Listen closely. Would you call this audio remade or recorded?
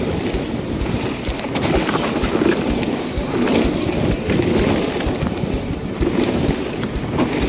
recorded